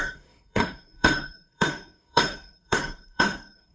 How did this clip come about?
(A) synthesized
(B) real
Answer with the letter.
A